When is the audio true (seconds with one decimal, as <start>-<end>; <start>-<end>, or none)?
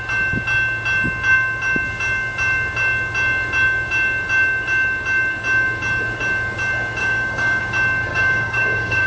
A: 0.0-7.0; 7.6-8.1